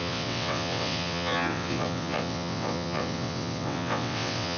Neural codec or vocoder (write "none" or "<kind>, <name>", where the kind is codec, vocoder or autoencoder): vocoder, WaveNeXt